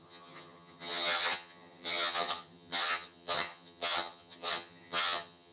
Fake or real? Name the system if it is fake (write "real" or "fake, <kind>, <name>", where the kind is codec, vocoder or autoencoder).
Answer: fake, vocoder, HiFi-GAN